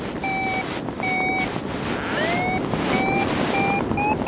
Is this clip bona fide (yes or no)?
yes